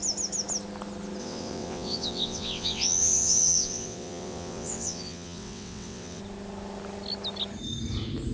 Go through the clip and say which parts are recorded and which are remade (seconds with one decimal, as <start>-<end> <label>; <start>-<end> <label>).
0.0-1.2 recorded; 1.2-6.2 remade; 6.2-8.3 recorded